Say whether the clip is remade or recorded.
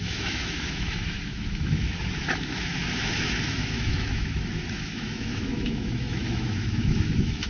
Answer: remade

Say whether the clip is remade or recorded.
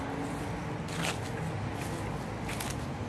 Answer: recorded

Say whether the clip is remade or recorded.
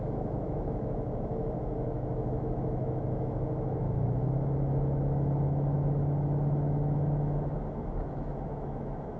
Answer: remade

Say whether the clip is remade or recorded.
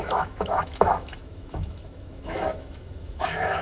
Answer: remade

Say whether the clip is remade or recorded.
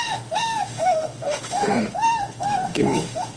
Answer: remade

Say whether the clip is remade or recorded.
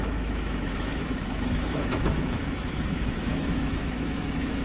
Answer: remade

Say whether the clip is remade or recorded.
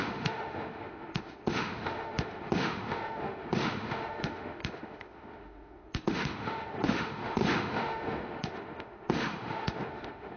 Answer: remade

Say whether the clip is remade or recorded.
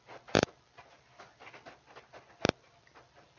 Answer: recorded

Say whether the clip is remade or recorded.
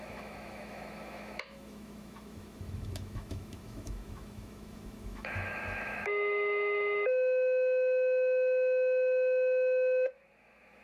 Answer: remade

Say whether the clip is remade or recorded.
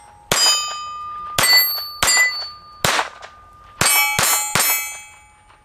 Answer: recorded